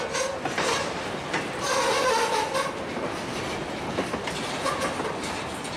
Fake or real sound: real